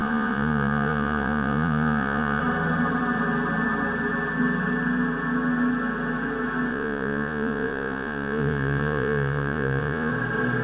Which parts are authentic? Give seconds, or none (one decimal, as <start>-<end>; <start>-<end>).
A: 2.4-6.7; 10.1-10.6